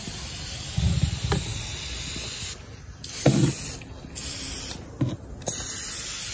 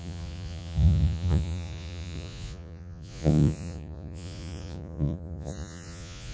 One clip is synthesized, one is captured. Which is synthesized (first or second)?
second